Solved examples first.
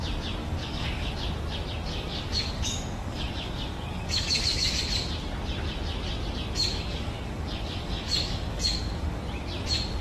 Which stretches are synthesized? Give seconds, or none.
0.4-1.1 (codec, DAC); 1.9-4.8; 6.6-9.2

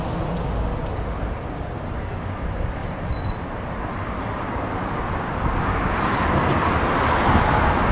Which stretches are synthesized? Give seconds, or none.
none